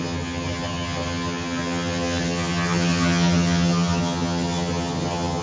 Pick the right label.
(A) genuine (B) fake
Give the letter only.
B